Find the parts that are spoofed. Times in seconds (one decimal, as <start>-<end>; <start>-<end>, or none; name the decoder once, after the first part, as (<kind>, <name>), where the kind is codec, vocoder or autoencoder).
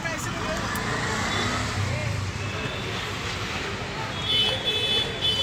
none